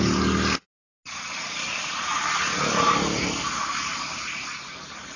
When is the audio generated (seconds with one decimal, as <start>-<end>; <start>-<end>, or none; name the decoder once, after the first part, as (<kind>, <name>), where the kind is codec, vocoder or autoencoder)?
none